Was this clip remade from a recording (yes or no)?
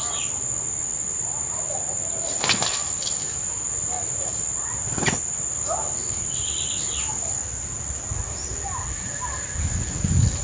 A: no